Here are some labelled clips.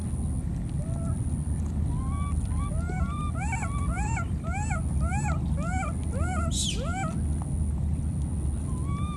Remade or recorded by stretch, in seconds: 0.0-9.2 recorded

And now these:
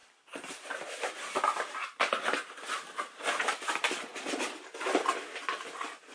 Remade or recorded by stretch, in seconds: 0.0-0.7 recorded; 0.7-6.1 remade